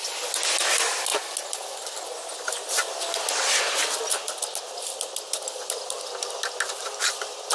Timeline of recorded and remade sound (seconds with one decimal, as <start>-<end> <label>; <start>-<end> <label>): 0.0-7.5 recorded